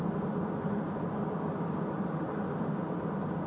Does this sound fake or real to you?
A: real